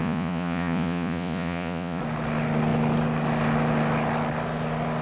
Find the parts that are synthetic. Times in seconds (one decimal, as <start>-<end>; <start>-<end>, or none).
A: 0.0-2.0